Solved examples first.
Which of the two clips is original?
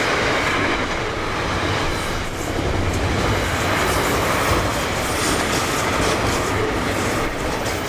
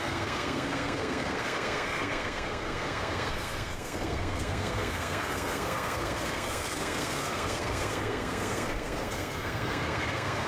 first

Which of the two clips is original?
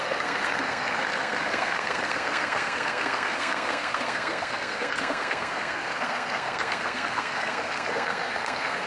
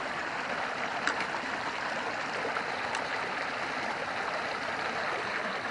second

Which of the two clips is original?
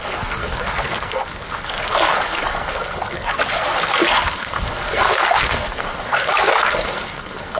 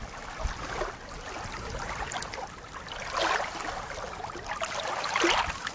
second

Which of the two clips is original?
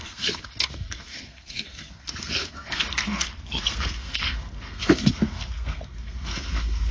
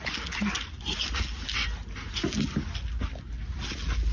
second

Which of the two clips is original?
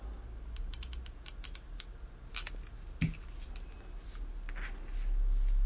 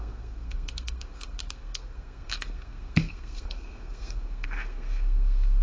first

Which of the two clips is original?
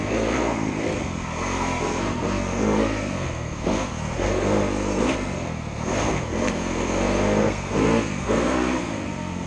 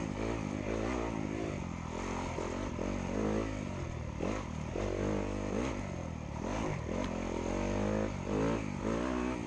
second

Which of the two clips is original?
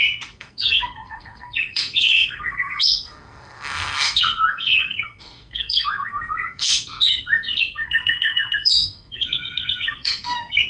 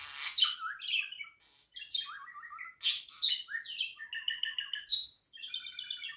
second